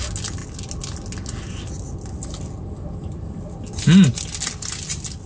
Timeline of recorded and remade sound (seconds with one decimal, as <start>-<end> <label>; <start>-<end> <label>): 0.0-5.3 recorded